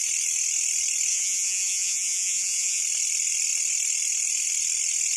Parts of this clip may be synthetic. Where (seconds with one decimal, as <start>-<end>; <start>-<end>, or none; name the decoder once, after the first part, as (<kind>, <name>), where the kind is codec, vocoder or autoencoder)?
1.1-2.8 (vocoder, Vocos)